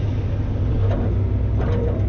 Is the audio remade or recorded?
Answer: recorded